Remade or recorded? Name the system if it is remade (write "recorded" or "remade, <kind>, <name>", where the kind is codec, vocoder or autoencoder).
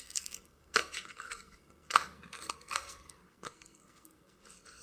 remade, codec, SNAC